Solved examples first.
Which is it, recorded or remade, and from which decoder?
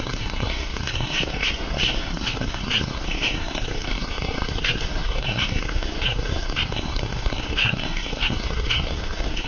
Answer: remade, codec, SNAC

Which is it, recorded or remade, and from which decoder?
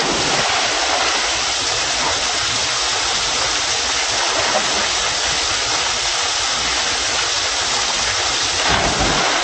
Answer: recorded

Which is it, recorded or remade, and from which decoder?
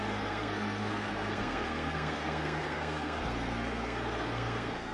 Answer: remade, codec, SNAC